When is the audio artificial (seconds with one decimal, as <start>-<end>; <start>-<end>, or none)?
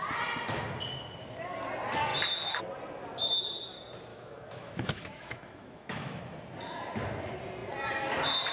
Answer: 4.1-6.2